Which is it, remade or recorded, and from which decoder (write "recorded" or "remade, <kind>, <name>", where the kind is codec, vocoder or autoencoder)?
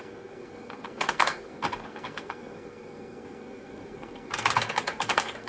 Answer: remade, codec, SNAC